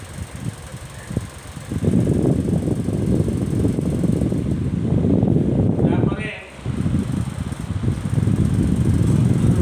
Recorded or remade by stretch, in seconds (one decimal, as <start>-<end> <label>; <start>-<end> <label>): 0.0-9.6 recorded